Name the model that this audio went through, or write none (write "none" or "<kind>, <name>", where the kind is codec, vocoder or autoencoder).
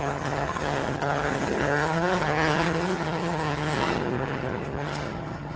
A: vocoder, HiFi-GAN